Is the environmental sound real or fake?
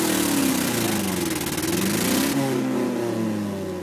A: real